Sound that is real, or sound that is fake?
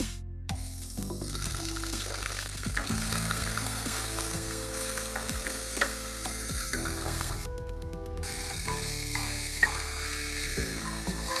fake